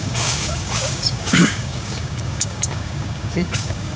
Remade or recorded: remade